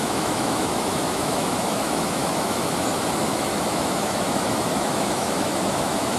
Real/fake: fake